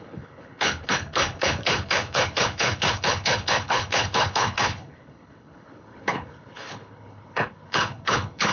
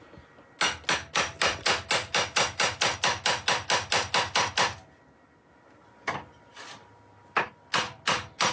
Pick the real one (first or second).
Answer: second